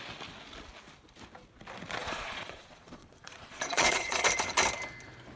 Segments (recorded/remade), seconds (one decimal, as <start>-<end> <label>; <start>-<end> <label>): 0.0-2.0 recorded; 2.0-4.2 remade; 4.2-5.4 recorded

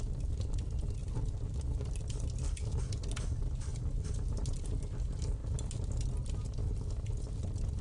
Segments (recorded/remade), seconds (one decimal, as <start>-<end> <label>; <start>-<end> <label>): 0.0-7.8 recorded

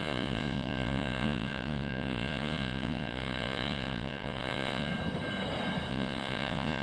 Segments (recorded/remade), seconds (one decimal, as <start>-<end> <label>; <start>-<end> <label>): 0.0-4.9 remade; 4.9-5.9 recorded; 5.9-6.8 remade

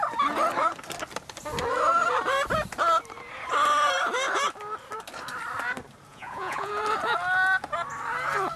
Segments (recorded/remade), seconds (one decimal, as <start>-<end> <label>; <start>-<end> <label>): 0.0-6.1 recorded; 6.1-6.7 remade; 6.7-8.6 recorded

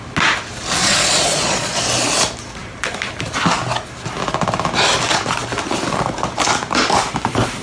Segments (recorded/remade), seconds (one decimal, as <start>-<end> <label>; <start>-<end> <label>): 0.0-0.8 recorded; 0.8-1.8 remade; 1.8-7.6 recorded

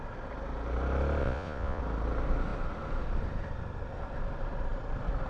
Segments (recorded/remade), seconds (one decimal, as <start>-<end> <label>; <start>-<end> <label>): 0.0-1.2 recorded; 1.2-1.8 remade; 1.8-5.3 recorded

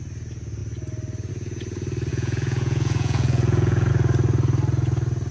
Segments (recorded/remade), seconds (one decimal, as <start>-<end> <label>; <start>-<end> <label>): 0.0-2.1 recorded; 2.1-3.9 remade; 3.9-5.3 recorded